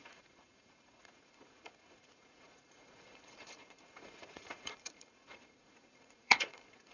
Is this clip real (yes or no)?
no